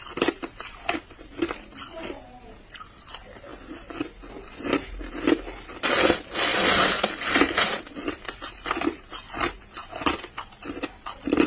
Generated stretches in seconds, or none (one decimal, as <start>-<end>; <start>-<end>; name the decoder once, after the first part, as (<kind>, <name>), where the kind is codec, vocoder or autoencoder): none

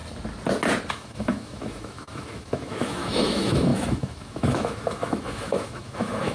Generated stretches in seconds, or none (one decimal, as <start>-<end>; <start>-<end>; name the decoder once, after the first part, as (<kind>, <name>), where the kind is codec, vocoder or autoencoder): 0.9-6.3 (autoencoder, DAC-VAE)

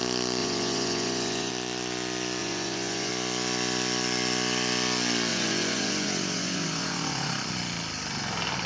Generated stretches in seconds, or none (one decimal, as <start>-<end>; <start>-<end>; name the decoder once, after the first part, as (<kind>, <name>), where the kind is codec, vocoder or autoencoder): 0.4-1.5 (vocoder, Vocos); 2.4-3.1; 5.3-7.3

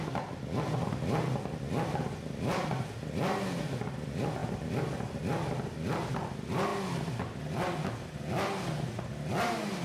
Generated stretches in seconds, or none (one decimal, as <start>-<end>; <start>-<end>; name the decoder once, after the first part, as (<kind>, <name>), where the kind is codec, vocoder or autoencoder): none

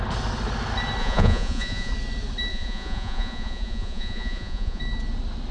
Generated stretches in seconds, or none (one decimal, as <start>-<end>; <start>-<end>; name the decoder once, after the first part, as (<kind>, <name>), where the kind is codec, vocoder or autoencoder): 1.0-1.9 (vocoder, Vocos); 2.5-4.8

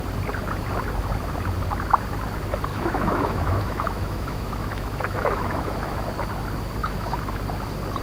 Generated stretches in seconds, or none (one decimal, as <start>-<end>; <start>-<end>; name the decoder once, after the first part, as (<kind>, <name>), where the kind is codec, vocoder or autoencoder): 2.7-6.0 (autoencoder, DAC-VAE); 6.8-7.4

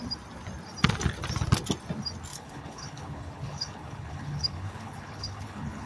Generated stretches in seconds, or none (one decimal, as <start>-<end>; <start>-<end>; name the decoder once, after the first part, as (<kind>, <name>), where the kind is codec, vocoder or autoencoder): 2.3-5.9 (codec, HILCodec)